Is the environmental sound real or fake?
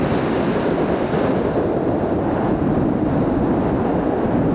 real